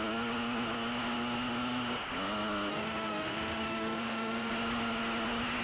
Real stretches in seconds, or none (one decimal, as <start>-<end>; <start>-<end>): 0.0-2.7; 4.5-5.6